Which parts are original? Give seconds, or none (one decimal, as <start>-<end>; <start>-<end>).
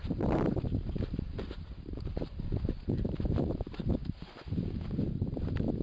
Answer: 4.0-5.8